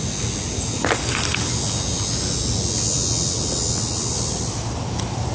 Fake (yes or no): no